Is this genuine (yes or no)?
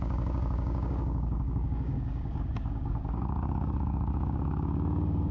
no